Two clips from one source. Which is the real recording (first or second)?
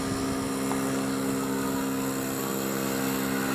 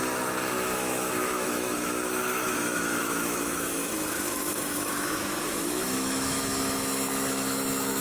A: first